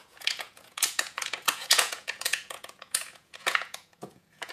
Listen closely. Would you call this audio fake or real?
fake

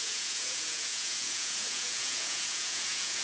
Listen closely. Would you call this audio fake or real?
fake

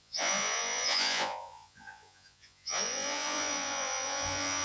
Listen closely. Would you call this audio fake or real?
fake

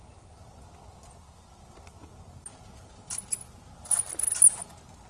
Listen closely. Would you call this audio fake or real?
real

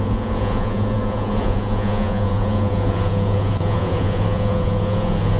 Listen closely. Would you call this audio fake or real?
fake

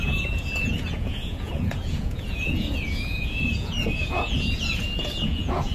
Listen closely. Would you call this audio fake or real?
fake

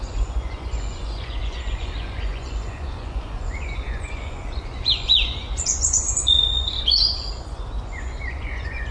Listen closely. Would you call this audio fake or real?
fake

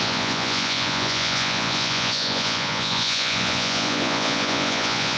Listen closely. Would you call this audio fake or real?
fake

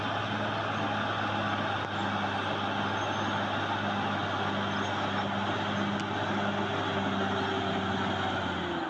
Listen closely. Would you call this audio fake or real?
real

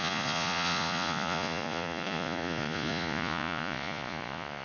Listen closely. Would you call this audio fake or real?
fake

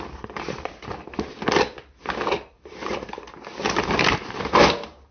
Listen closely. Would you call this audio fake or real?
real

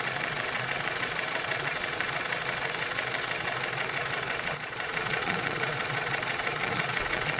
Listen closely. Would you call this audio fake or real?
fake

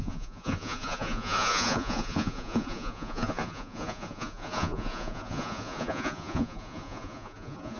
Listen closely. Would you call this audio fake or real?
fake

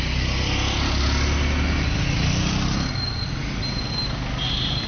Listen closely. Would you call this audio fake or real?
real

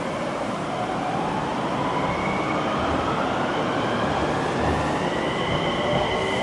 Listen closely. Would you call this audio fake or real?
real